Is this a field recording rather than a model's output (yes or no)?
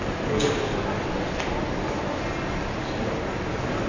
yes